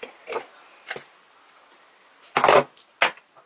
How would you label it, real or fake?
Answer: real